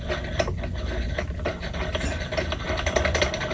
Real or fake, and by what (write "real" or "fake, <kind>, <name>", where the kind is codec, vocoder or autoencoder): real